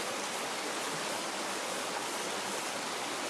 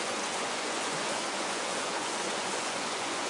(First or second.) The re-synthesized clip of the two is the second